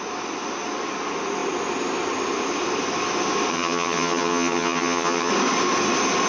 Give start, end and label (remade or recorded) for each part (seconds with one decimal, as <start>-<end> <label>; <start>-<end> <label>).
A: 0.0-3.5 recorded; 3.5-5.3 remade; 5.3-6.3 recorded